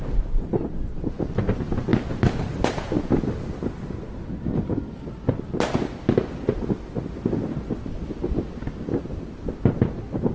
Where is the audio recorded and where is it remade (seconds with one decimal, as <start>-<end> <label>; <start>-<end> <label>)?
0.0-8.9 recorded; 8.9-9.5 remade; 9.5-10.3 recorded